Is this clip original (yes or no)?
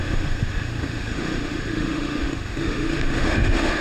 no